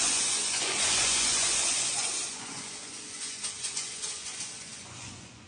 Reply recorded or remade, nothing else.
remade